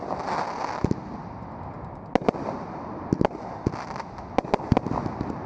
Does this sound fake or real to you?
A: real